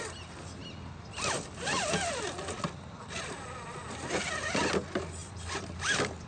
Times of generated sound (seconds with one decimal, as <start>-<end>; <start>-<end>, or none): 5.2-5.8